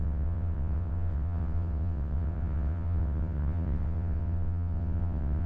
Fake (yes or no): yes